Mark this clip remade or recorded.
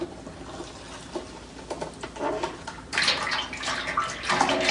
recorded